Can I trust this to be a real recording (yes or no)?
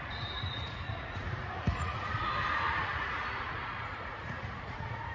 no